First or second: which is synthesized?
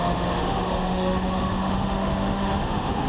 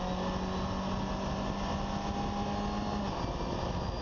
first